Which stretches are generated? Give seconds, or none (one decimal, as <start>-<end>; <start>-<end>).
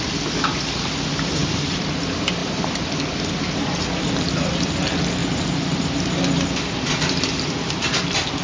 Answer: 1.4-2.0; 2.4-4.8; 5.2-8.0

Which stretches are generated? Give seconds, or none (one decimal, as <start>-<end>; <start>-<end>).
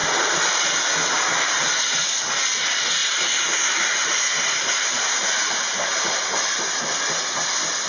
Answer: 0.0-0.6; 3.0-6.8